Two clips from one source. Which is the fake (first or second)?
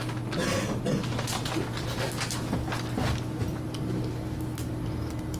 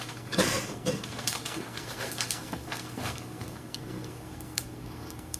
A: second